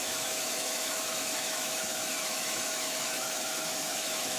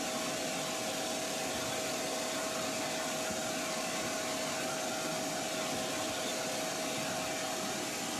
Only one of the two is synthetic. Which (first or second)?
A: first